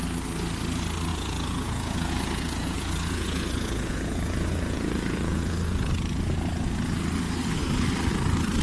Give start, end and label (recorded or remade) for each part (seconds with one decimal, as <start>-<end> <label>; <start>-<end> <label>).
0.0-1.1 recorded; 1.1-5.9 remade; 5.9-8.6 recorded

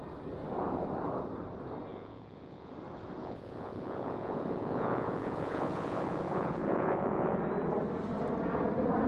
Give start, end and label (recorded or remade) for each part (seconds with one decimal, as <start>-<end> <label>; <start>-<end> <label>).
0.0-1.9 recorded; 1.9-2.7 remade; 2.7-3.2 recorded; 3.2-7.4 remade; 7.4-9.1 recorded

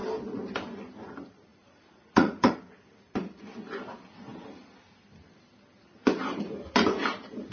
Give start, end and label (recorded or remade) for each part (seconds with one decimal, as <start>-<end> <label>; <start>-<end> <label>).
0.0-1.5 recorded; 1.5-2.5 remade; 2.5-7.5 recorded

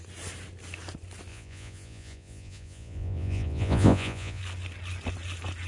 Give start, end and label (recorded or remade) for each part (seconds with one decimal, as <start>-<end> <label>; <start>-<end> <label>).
0.0-1.3 recorded; 1.3-4.4 remade; 4.4-5.7 recorded

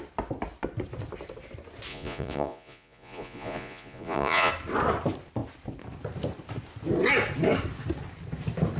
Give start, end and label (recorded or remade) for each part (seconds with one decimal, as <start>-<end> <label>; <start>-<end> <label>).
0.0-1.9 recorded; 1.9-4.5 remade; 4.5-8.8 recorded